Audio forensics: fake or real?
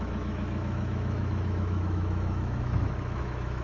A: fake